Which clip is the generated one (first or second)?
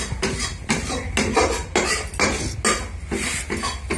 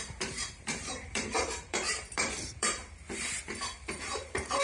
second